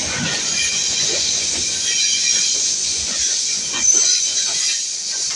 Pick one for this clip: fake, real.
fake